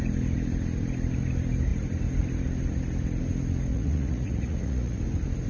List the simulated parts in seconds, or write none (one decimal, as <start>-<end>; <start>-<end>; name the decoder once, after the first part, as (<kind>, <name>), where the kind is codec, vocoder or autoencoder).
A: 3.7-5.0 (vocoder, Vocos)